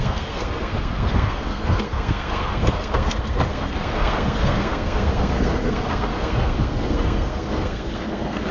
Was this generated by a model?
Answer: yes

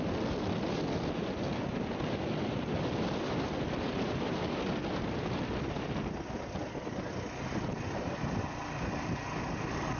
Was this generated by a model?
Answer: no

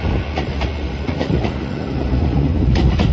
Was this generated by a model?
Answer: yes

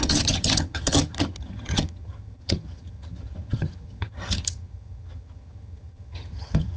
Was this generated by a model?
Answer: yes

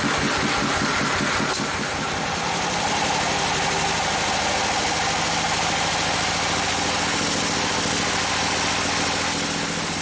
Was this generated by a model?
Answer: no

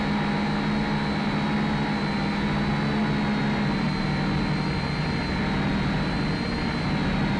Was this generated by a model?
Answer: no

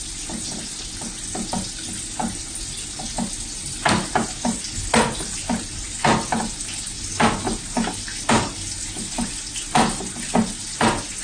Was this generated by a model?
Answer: no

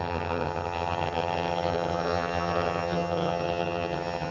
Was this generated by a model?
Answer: yes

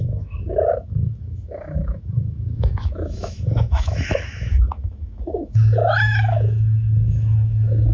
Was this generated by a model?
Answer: yes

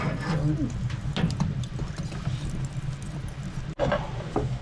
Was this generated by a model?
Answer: no